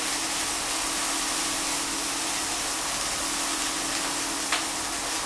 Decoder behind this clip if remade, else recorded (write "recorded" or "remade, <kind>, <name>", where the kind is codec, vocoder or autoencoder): recorded